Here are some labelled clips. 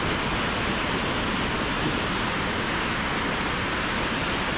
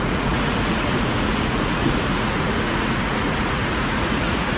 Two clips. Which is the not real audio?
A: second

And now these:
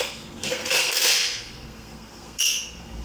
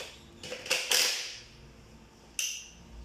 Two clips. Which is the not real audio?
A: first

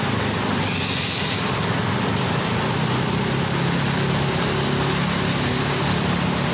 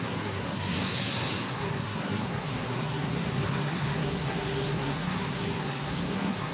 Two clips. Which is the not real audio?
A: second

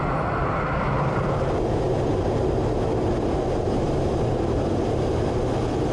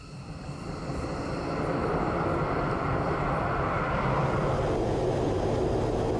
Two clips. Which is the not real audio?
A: first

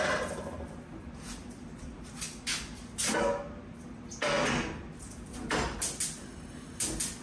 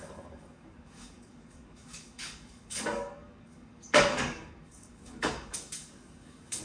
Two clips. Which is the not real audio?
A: second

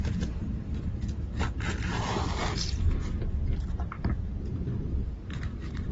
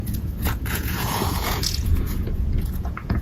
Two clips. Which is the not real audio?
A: second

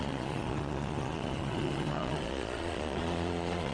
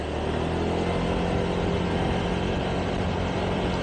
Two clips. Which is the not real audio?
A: first